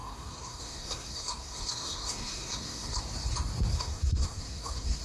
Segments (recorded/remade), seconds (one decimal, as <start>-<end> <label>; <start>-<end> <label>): 0.0-3.0 remade; 3.0-3.7 recorded; 3.7-5.0 remade